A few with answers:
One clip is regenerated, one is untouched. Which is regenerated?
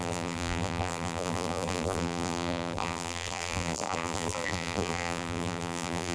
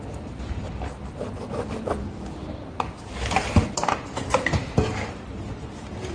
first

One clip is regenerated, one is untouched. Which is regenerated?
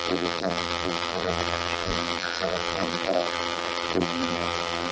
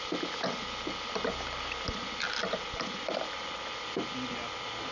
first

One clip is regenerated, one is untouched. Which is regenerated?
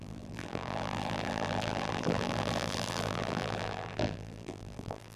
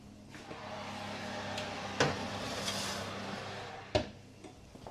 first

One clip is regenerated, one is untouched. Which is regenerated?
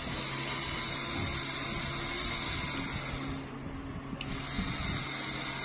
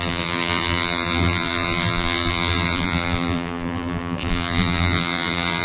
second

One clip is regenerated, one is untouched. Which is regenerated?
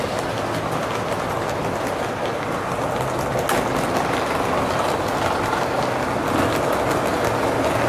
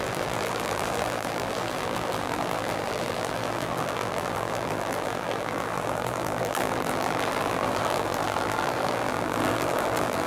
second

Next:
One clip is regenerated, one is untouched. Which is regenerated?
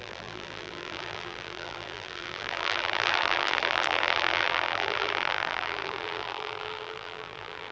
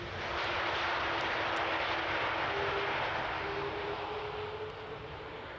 first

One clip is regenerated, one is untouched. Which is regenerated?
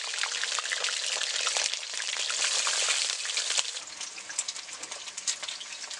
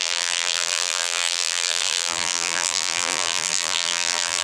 second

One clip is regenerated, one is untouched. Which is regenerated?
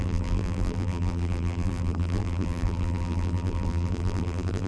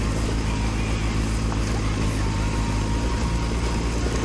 first